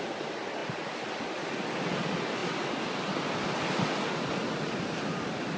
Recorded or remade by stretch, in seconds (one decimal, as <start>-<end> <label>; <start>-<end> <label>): 0.0-5.6 recorded